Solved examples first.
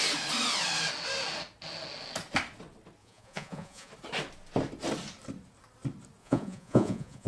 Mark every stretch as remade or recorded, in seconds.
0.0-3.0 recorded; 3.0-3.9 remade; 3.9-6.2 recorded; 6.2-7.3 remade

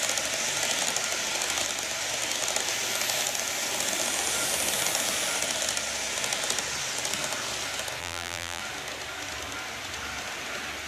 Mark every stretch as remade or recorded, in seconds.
0.0-8.0 recorded; 8.0-8.6 remade; 8.6-10.9 recorded

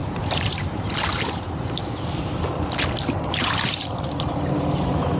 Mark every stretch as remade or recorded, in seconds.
0.0-1.8 remade; 1.8-4.5 recorded; 4.5-5.2 remade

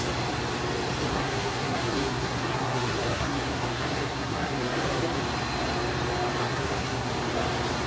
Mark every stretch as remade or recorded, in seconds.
0.0-1.1 recorded; 1.1-5.2 remade; 5.2-6.4 recorded; 6.4-7.1 remade; 7.1-7.9 recorded